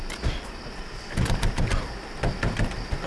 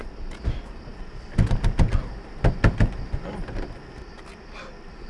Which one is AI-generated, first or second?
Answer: first